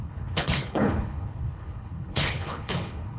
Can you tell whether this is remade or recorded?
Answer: remade